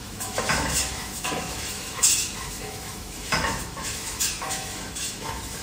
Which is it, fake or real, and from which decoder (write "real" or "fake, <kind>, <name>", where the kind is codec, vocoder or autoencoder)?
fake, autoencoder, DAC-VAE